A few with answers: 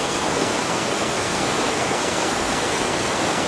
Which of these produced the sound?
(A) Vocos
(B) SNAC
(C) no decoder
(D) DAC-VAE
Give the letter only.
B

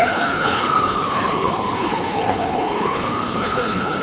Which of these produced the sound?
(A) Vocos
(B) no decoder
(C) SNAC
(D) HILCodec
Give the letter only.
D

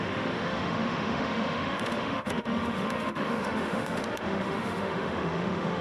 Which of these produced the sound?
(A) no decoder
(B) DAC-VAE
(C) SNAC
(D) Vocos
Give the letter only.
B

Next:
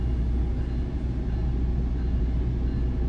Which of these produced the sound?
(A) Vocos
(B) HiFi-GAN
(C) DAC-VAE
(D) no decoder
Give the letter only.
D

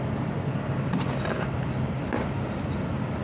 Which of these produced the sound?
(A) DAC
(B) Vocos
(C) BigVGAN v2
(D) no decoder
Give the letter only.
D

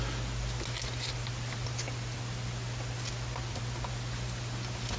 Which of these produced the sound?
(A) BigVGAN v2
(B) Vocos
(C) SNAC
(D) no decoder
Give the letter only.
D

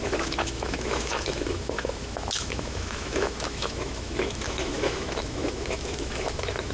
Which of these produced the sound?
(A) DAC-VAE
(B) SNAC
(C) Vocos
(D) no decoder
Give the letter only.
A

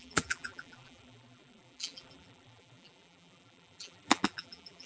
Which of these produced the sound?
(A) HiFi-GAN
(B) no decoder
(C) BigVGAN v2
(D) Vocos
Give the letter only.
C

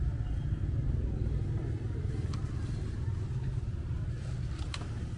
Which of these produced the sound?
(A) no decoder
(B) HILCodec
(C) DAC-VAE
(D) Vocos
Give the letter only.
A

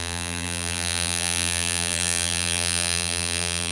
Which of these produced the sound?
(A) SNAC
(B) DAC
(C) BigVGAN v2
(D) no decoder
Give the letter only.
C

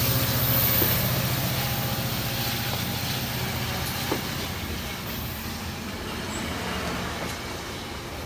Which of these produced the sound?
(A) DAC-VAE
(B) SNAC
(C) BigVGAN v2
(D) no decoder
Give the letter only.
D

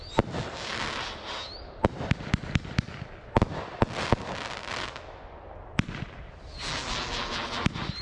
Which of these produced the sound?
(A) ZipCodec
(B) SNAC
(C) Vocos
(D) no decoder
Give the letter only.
D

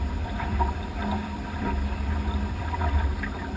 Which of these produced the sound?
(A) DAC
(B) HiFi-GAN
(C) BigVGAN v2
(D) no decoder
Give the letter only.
C